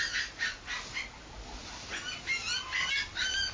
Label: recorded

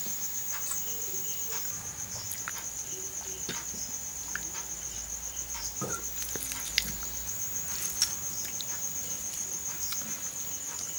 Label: recorded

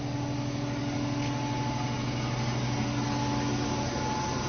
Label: recorded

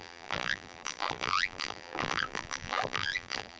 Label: remade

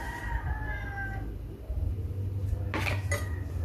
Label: recorded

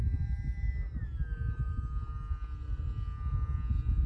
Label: recorded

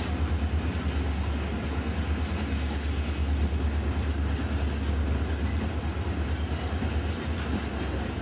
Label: recorded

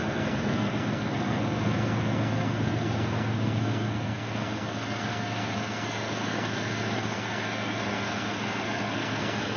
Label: remade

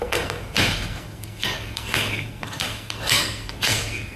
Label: remade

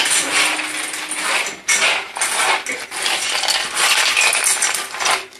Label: recorded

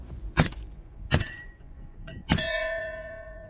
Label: remade